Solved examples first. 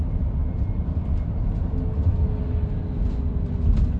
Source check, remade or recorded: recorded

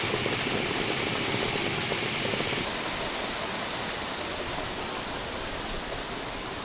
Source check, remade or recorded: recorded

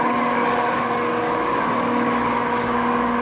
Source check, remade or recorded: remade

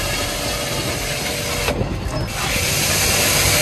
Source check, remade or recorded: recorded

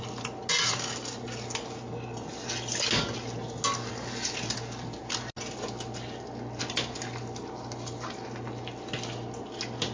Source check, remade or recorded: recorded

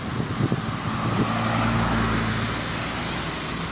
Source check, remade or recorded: recorded